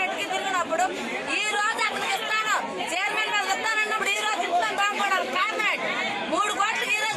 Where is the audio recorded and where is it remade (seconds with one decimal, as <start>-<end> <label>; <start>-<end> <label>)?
0.0-1.5 recorded; 1.5-2.2 remade; 2.2-3.7 recorded; 3.7-5.6 remade; 5.6-7.2 recorded